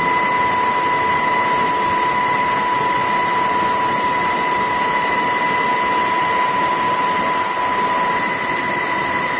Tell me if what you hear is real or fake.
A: real